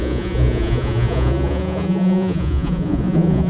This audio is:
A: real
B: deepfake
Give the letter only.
B